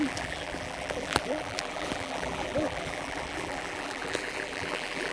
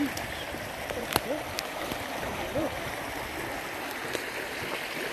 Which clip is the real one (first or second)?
second